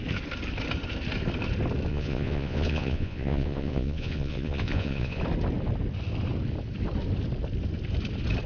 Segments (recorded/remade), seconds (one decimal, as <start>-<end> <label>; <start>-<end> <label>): 0.0-1.9 recorded; 1.9-5.2 remade; 5.2-8.5 recorded